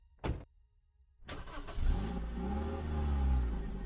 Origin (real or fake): real